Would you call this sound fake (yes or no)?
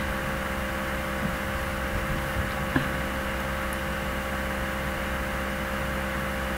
no